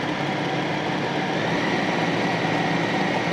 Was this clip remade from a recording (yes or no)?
no